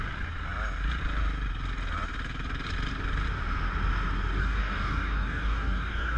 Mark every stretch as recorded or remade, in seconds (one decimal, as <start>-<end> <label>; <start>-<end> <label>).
0.0-4.4 recorded; 4.4-6.2 remade